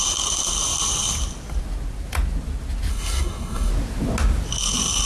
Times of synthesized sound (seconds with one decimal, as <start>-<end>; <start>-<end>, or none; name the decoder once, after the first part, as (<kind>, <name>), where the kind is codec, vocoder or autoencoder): 2.9-3.7 (codec, SNAC)